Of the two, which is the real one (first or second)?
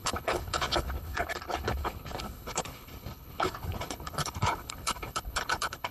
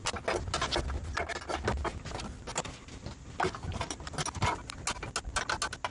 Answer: second